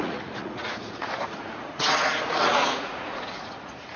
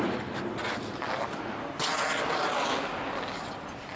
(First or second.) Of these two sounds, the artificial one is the first